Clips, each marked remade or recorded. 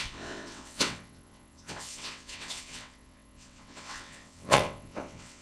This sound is remade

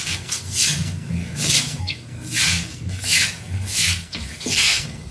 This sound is remade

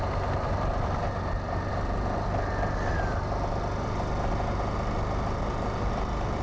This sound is recorded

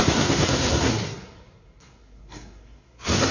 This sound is remade